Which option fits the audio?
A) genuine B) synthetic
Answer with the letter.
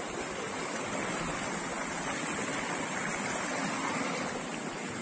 A